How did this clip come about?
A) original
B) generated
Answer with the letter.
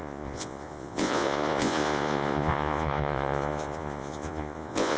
B